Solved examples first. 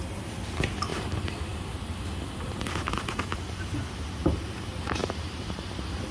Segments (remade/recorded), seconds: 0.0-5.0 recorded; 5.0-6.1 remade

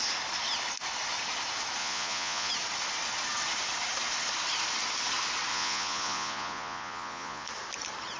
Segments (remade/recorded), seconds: 0.0-1.8 recorded; 1.8-2.5 remade; 2.5-5.5 recorded; 5.5-7.5 remade; 7.5-8.2 recorded

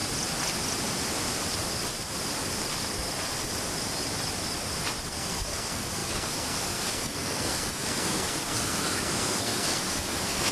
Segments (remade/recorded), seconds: 0.0-5.1 recorded; 5.1-10.5 remade

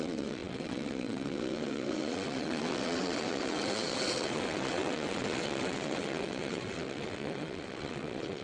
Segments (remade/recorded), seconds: 0.0-8.4 remade

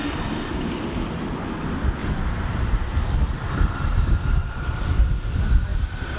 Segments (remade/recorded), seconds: 0.0-2.0 recorded; 2.0-4.5 remade; 4.5-5.7 recorded; 5.7-6.2 remade